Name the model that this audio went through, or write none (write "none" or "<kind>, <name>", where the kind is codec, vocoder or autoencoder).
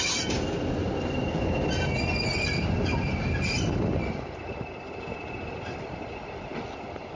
none